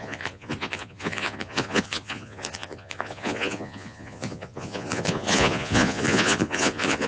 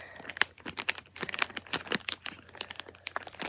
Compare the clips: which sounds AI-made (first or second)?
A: first